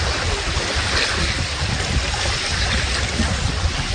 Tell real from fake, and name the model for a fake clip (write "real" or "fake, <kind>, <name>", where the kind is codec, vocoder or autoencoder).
real